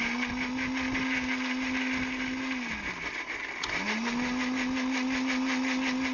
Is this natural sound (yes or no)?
yes